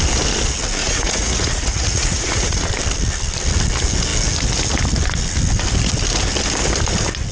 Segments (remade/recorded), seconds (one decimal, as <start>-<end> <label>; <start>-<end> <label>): 0.0-0.8 recorded; 0.8-2.7 remade; 2.7-7.3 recorded

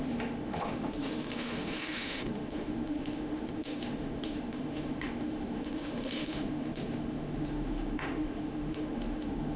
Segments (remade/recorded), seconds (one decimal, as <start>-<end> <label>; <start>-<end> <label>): 0.0-9.6 remade

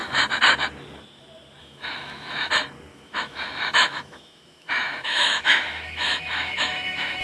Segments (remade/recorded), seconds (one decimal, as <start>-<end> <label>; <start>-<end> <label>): 0.0-1.6 recorded; 1.6-2.5 remade; 2.5-2.9 recorded; 2.9-7.2 remade

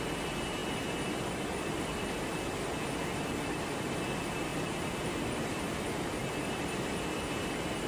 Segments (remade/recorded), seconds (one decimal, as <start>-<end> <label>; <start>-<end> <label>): 0.0-4.5 recorded; 4.5-7.9 remade

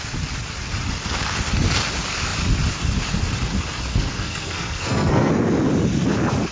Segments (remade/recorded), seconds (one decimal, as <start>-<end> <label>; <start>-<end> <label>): 0.0-3.9 recorded; 3.9-5.3 remade; 5.3-6.5 recorded

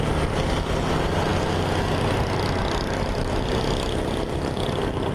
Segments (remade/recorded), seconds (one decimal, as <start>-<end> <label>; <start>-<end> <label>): 0.0-5.1 recorded

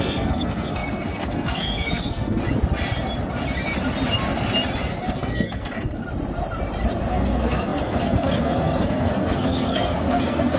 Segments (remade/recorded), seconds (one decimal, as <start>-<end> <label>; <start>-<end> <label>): 0.0-2.4 remade; 2.4-5.1 recorded; 5.1-6.0 remade; 6.0-7.1 recorded; 7.1-10.6 remade

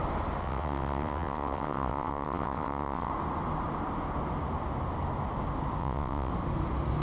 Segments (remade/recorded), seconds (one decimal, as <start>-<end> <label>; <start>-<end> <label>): 0.0-0.4 recorded; 0.4-3.1 remade; 3.1-5.8 recorded; 5.8-6.3 remade; 6.3-7.0 recorded